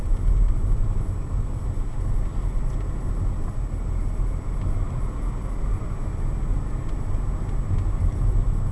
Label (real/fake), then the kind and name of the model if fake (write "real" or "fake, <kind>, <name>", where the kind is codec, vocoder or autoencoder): real